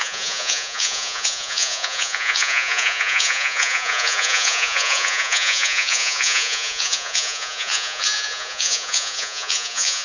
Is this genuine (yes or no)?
no